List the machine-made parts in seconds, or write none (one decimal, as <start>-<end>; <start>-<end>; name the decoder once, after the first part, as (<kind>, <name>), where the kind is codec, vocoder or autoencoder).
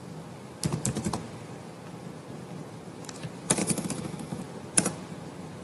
3.6-4.4 (autoencoder, DAC-VAE)